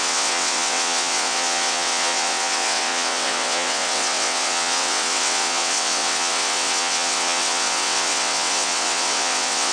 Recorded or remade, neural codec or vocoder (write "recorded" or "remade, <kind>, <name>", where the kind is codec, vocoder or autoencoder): remade, vocoder, WaveNeXt